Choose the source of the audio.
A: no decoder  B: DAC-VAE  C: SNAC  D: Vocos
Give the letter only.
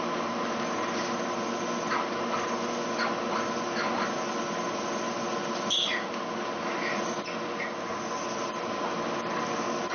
A